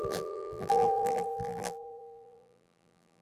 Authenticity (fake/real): fake